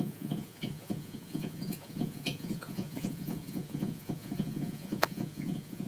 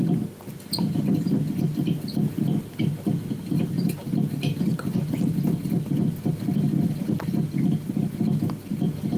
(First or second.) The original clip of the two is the second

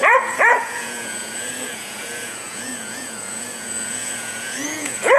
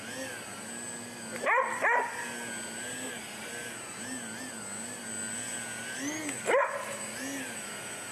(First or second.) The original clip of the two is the second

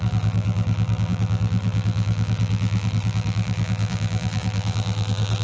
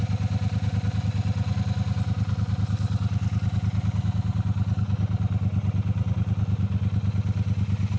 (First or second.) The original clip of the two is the second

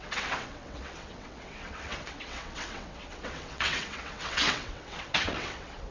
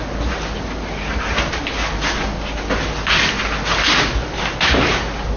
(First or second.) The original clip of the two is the second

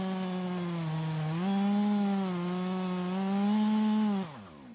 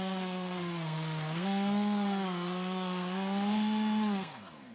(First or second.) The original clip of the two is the first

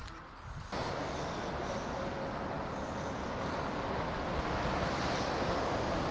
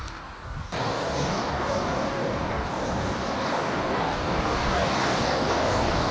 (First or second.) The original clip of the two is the first